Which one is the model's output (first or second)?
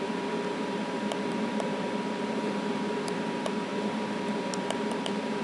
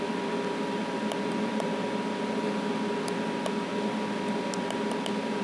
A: first